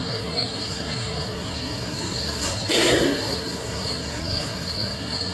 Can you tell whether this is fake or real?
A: fake